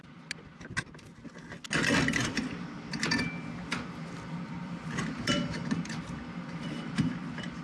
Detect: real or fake real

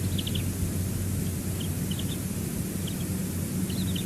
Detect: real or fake real